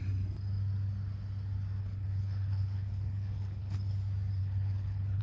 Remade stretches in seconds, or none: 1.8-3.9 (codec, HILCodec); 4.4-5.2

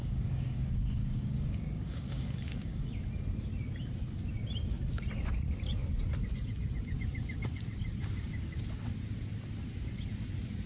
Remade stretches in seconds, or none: 0.0-2.8 (codec, DAC)